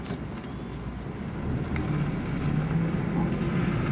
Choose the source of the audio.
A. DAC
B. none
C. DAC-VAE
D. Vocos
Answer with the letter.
B